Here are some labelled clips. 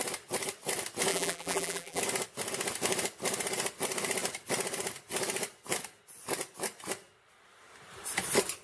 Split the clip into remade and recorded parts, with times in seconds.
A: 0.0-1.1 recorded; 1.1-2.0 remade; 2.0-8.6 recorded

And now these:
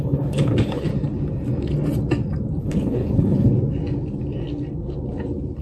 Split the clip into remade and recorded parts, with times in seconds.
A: 0.0-0.9 remade; 0.9-2.6 recorded; 2.6-3.5 remade; 3.5-5.6 recorded

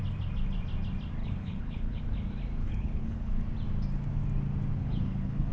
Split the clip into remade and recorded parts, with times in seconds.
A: 0.0-1.2 recorded; 1.2-2.0 remade; 2.0-2.6 recorded; 2.6-3.4 remade; 3.4-4.8 recorded; 4.8-5.5 remade

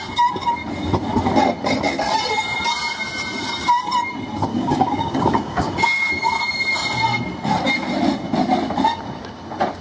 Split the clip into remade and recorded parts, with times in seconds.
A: 0.0-4.5 recorded; 4.5-6.1 remade; 6.1-9.8 recorded

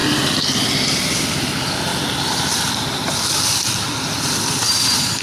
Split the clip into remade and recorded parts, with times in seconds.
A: 0.0-0.9 recorded; 0.9-1.9 remade; 1.9-2.7 recorded; 2.7-5.2 remade

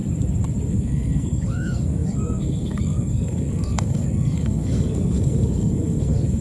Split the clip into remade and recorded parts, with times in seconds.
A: 0.0-0.7 recorded; 0.7-6.4 remade